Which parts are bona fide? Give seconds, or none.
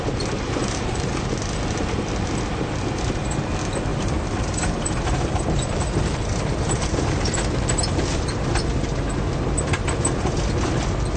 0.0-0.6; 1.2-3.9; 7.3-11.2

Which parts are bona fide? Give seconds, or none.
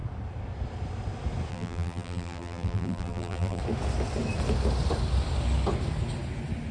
0.0-1.5; 3.6-6.7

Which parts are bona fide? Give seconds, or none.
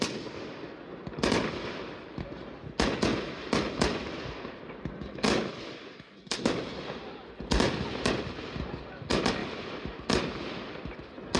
0.0-11.4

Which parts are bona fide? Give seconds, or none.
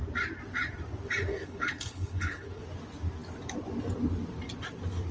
0.0-1.3; 2.6-5.1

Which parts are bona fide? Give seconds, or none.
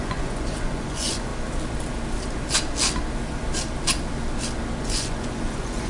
1.3-4.8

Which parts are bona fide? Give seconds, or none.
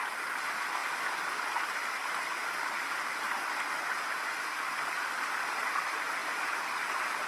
0.0-7.3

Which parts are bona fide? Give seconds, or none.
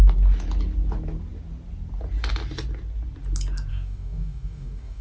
0.0-3.7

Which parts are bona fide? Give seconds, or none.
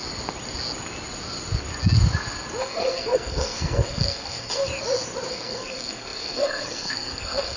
0.0-2.6; 4.7-5.3